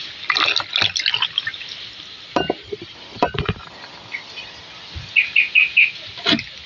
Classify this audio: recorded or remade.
recorded